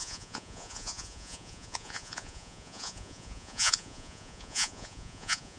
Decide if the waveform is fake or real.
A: fake